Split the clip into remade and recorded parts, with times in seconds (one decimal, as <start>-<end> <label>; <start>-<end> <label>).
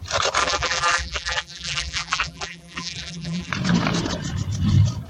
0.0-0.4 recorded; 0.4-3.5 remade; 3.5-5.1 recorded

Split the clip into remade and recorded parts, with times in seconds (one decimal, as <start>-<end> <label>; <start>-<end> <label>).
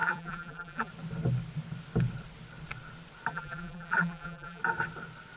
0.0-0.9 remade; 0.9-3.3 recorded; 3.3-4.6 remade; 4.6-5.4 recorded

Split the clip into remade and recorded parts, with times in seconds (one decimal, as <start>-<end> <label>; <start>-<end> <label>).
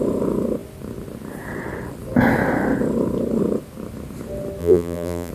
0.0-4.6 recorded; 4.6-5.3 remade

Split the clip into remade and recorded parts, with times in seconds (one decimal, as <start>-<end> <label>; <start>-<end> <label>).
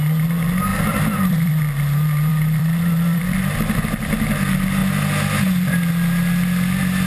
0.0-0.7 recorded; 0.7-1.5 remade; 1.5-2.3 recorded; 2.3-4.1 remade; 4.1-7.1 recorded